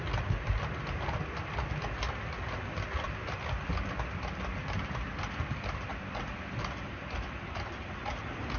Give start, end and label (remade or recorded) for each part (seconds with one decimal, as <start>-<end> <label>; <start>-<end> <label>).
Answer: 0.0-8.6 recorded

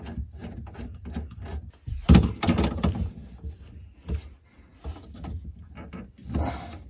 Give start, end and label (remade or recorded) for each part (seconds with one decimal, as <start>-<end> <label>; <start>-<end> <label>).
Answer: 0.0-6.9 recorded

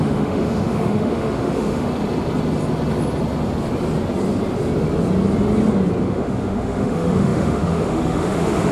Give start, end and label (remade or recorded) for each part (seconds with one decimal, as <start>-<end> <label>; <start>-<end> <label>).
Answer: 0.0-1.9 remade; 1.9-6.0 recorded; 6.0-8.7 remade

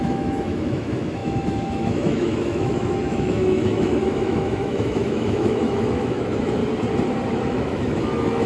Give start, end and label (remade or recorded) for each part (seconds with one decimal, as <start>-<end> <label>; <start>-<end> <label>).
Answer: 0.0-6.6 remade; 6.6-7.3 recorded; 7.3-8.5 remade

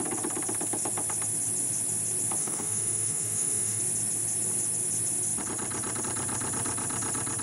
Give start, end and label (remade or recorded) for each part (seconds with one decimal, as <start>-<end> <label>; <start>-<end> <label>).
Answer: 0.0-2.4 recorded; 2.4-3.8 remade; 3.8-7.4 recorded

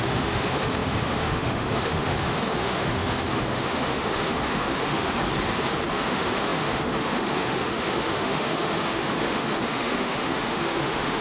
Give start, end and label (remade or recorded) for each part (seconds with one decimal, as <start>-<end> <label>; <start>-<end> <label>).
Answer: 0.0-5.2 remade; 5.2-5.9 recorded; 5.9-11.2 remade